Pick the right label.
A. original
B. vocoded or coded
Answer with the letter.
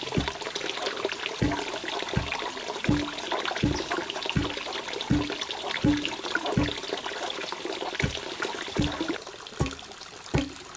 A